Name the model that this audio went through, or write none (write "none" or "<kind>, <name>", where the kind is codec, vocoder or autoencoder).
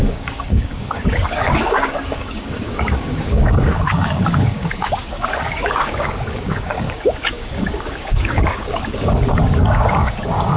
codec, DAC